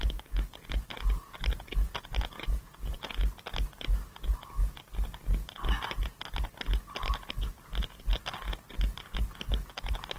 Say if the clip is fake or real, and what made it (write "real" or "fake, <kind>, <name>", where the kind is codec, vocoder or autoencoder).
real